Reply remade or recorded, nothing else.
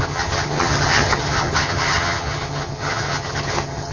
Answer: remade